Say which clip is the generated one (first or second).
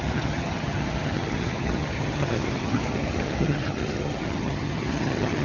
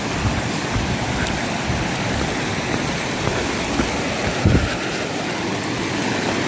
first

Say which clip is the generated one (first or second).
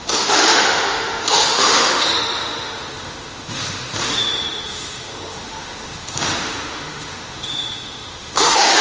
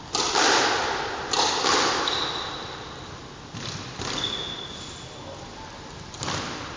first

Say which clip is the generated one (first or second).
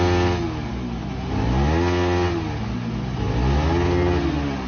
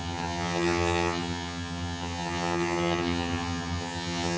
second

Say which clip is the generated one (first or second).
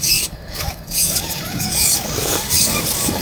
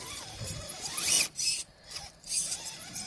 first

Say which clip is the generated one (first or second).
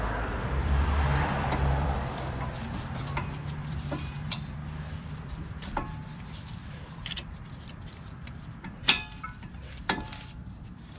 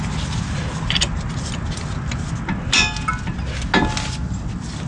first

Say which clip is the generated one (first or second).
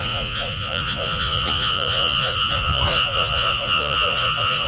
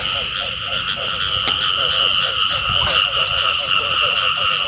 first